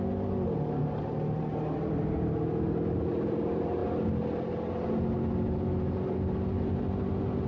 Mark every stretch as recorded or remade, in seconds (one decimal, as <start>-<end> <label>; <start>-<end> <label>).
0.0-7.5 recorded